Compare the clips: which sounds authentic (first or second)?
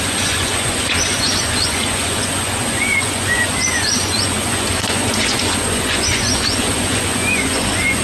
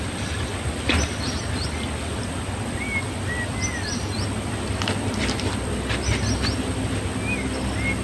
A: second